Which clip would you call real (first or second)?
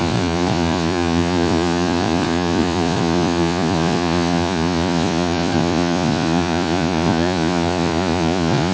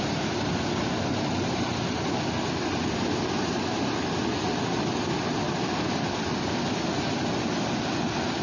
second